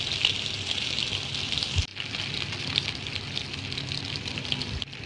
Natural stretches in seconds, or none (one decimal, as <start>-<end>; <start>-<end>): 0.0-1.9